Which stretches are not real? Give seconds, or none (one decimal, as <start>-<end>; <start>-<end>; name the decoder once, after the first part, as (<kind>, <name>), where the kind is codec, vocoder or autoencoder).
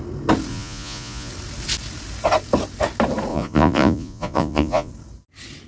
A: 0.5-1.3 (vocoder, Vocos); 3.3-4.9